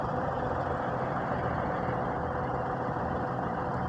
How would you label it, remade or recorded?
remade